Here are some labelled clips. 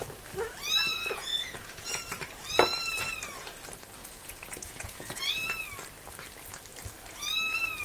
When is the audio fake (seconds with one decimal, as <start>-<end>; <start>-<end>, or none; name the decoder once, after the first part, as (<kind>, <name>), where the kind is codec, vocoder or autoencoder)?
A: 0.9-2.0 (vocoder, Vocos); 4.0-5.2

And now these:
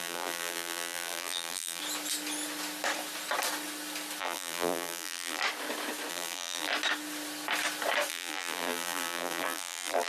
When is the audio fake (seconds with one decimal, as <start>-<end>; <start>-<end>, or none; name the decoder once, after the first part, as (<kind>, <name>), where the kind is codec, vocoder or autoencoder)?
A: 0.0-1.8 (vocoder, BigVGAN v2); 4.2-5.4; 6.1-6.7; 8.1-10.1

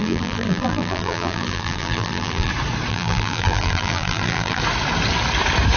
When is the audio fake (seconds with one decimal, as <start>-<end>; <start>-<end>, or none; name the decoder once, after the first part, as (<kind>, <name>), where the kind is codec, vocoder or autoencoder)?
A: 0.0-2.5 (vocoder, BigVGAN v2); 2.9-4.6

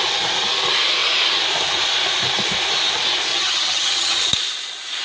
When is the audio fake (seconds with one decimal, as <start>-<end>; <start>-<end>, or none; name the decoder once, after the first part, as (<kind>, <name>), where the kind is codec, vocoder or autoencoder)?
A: 3.3-4.3 (vocoder, HiFi-GAN)

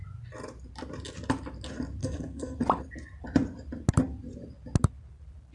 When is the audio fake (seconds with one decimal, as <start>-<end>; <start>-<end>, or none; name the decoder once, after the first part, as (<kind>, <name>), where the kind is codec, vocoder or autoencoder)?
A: 2.0-2.6 (codec, SNAC)